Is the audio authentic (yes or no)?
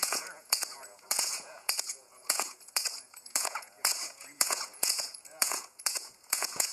no